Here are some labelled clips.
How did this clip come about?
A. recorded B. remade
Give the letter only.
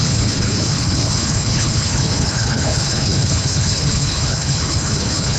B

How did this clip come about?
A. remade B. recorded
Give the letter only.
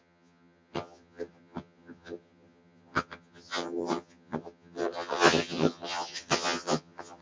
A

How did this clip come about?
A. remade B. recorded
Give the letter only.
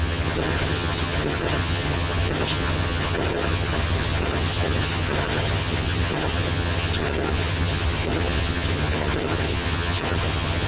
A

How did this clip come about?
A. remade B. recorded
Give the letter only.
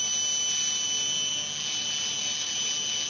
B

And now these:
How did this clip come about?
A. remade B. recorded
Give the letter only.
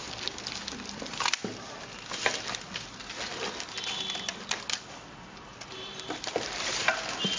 B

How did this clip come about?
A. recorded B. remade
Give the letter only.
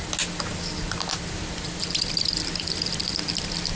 A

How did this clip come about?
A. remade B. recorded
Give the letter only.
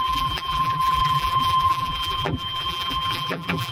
A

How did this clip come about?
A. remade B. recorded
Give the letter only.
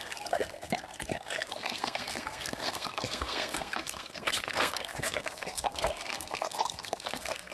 A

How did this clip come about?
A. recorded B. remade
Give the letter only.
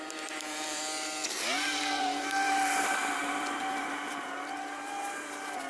B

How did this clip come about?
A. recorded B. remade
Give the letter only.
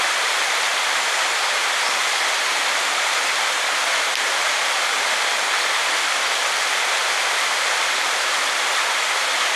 A